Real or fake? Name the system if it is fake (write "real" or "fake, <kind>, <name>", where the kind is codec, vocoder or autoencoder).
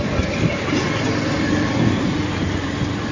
real